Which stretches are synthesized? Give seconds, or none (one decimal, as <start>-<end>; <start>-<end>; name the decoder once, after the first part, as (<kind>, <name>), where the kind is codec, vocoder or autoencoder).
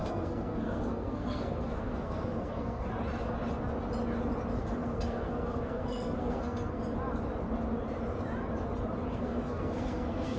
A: 0.0-2.9 (codec, SNAC); 4.6-6.8; 9.1-10.4